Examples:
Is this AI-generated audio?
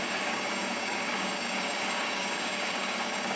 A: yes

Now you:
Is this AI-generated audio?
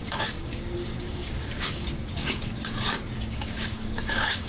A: yes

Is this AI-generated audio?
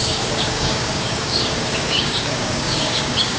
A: yes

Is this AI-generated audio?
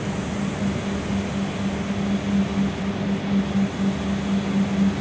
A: no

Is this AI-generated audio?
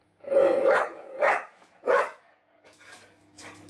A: yes